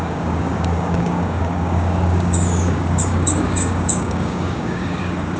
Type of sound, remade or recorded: remade